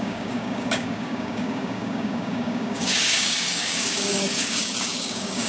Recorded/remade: remade